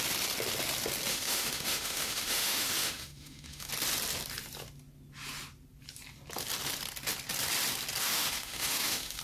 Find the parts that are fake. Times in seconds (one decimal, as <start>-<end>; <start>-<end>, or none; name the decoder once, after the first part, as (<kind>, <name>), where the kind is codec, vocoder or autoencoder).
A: 1.1-3.7 (autoencoder, DAC-VAE); 8.0-9.2